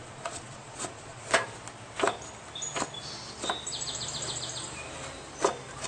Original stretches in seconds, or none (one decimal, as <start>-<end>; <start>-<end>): 1.3-5.9